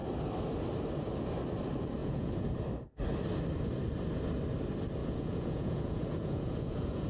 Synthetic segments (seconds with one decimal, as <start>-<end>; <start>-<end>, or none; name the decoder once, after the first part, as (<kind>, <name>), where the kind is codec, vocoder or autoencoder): 2.0-2.5 (vocoder, Vocos); 5.0-7.1